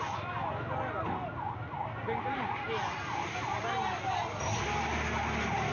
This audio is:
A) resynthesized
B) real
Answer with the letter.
B